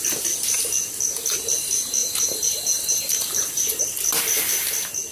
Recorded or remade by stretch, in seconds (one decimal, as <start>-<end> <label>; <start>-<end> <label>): 0.0-2.0 recorded; 2.0-3.8 remade; 3.8-5.1 recorded